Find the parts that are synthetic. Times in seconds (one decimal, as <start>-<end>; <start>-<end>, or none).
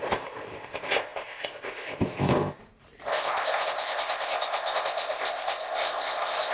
0.0-2.6; 3.1-6.5